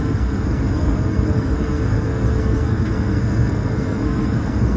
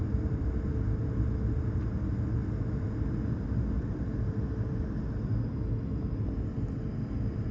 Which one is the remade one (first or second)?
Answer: first